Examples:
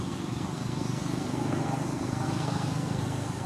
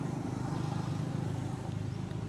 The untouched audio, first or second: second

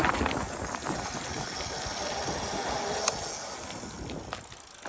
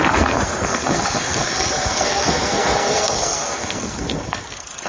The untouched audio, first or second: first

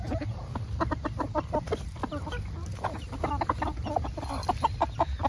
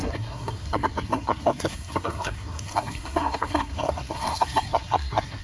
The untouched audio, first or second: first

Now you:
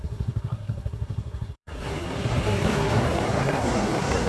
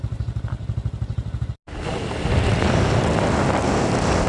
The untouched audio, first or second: second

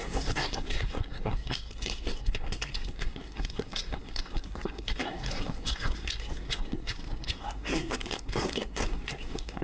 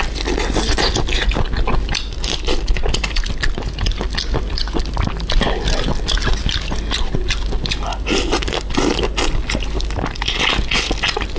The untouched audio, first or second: second